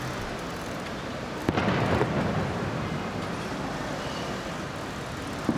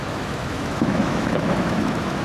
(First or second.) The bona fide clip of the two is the first